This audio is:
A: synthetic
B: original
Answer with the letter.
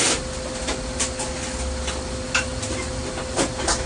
B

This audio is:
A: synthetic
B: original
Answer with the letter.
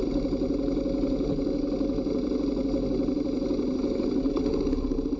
B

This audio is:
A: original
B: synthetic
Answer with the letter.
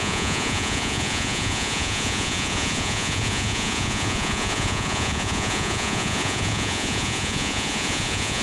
B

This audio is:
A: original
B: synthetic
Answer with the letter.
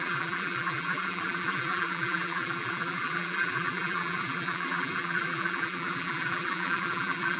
B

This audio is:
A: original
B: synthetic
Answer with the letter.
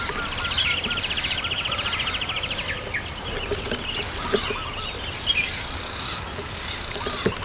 A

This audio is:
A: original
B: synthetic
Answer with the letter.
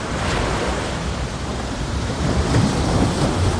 A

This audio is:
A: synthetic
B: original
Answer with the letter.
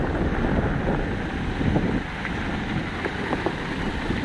B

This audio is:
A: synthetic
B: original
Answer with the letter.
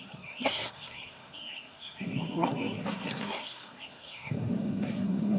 A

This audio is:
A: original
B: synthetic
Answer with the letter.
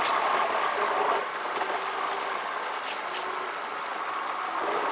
A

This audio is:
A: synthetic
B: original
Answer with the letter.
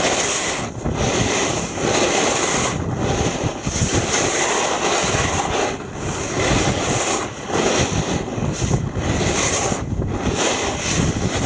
B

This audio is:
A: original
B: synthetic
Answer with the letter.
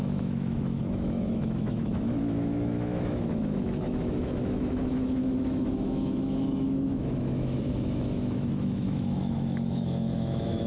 B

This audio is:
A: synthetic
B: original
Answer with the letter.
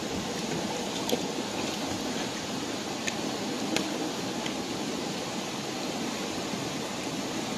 B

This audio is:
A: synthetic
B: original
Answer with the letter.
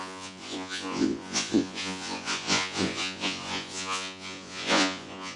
A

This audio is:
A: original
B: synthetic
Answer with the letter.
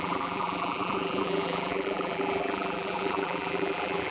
B